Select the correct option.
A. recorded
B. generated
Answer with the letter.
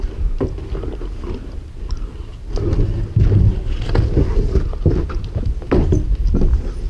A